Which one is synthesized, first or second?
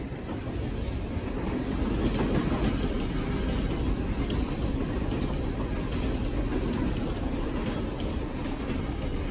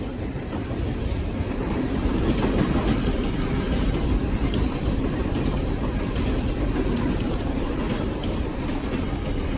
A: second